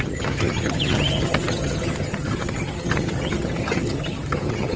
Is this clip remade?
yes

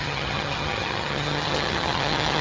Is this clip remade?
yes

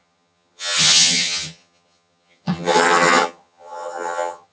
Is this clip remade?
yes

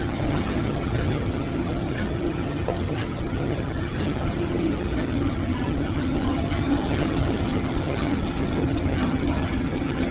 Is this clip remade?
yes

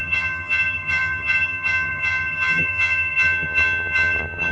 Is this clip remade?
yes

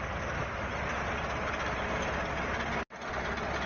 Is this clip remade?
no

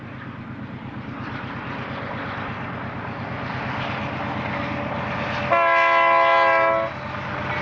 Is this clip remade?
no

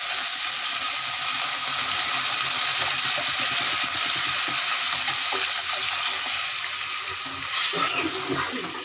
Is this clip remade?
no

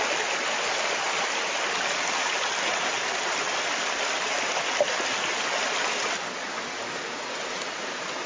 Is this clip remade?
no